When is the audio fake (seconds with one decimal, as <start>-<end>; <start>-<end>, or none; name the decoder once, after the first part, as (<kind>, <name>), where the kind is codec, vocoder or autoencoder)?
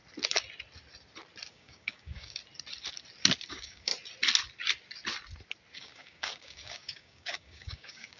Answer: 1.5-2.4 (codec, DAC); 3.5-3.9; 5.8-8.2